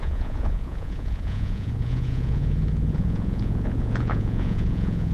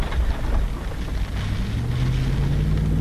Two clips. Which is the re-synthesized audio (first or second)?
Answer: first